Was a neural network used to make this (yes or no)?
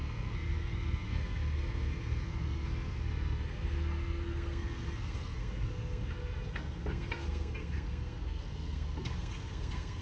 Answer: yes